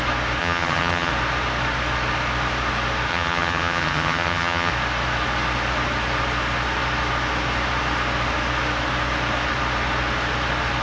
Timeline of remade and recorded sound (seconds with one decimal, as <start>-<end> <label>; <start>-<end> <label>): 0.0-0.4 recorded; 0.4-1.1 remade; 1.1-3.1 recorded; 3.1-4.7 remade; 4.7-10.8 recorded